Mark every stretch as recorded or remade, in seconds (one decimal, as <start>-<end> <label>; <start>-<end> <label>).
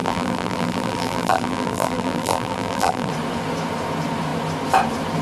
0.0-3.1 remade; 3.1-5.2 recorded